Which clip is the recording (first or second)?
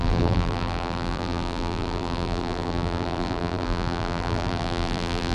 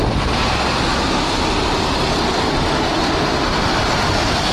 second